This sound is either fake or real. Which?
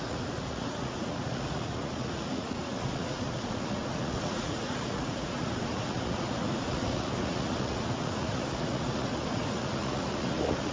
fake